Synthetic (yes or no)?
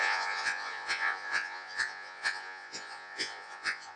yes